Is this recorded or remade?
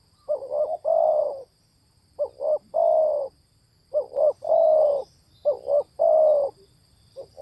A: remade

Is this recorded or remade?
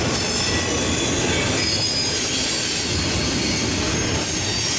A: recorded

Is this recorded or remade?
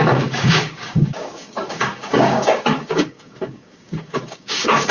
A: remade